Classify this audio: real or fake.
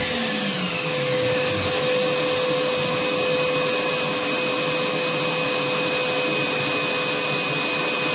real